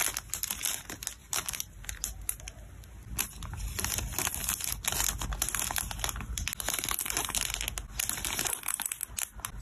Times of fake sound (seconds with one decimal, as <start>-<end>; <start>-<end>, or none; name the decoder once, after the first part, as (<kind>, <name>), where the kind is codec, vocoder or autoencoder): 1.2-2.4 (vocoder, BigVGAN v2)